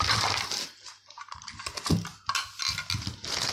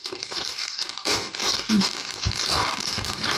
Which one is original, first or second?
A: first